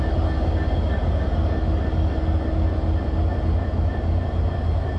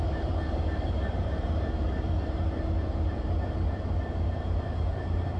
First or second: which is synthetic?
second